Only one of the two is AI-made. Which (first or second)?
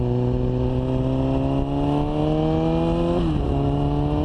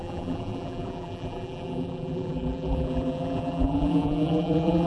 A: second